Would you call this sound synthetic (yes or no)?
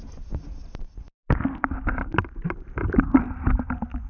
no